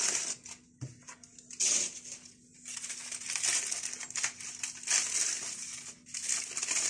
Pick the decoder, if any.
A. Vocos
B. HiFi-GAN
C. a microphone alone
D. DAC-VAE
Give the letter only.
C